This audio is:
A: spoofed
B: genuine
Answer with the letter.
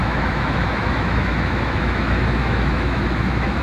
A